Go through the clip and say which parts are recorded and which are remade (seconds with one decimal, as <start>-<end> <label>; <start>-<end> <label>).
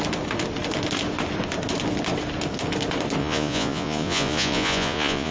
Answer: 0.0-3.2 recorded; 3.2-5.3 remade